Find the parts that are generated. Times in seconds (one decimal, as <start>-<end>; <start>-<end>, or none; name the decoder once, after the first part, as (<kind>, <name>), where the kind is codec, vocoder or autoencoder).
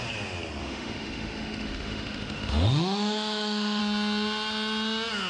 0.6-3.8 (autoencoder, DAC-VAE)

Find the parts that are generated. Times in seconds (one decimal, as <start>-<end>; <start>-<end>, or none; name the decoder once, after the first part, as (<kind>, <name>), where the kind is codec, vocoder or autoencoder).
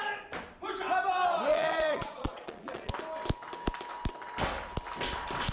1.5-2.9 (vocoder, Vocos)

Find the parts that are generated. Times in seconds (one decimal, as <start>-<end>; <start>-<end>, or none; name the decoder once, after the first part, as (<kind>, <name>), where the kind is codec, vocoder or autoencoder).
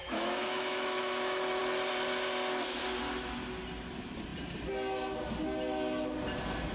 0.0-1.6 (autoencoder, DAC-VAE)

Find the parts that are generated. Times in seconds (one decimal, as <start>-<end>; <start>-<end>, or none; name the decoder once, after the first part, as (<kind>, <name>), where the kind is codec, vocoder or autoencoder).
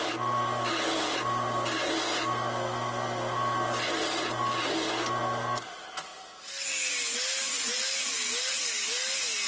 none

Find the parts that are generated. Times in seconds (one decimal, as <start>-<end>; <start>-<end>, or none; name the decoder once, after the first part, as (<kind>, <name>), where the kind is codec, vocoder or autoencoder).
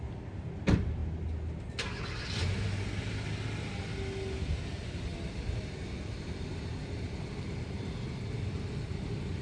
none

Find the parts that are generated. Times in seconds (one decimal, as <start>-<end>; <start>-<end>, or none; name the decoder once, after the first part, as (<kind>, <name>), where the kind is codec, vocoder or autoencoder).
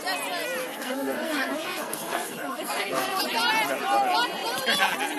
0.6-3.2 (codec, SNAC)